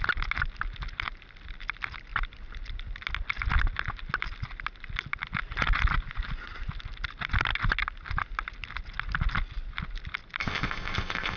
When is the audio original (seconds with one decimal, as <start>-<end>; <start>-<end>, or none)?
0.0-10.4

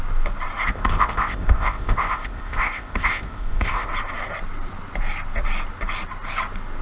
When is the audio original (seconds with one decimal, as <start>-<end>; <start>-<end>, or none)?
0.0-0.6; 3.9-6.8